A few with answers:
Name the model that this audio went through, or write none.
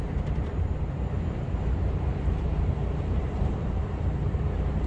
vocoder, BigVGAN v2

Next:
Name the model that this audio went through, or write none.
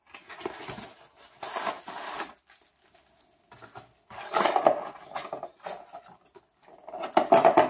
none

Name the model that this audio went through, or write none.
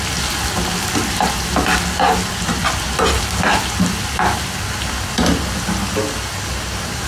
none